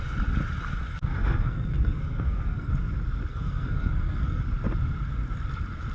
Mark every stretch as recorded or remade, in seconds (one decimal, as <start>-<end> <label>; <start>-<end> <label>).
0.0-0.9 recorded; 0.9-2.7 remade; 2.7-3.3 recorded; 3.3-4.4 remade; 4.4-5.9 recorded